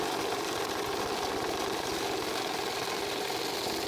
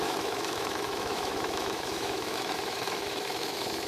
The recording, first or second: first